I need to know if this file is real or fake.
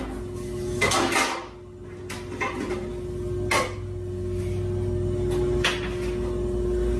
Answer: real